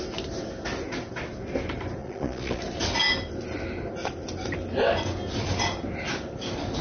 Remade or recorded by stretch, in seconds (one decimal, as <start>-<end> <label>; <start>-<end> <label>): 0.0-2.0 recorded; 2.0-2.6 remade; 2.6-6.8 recorded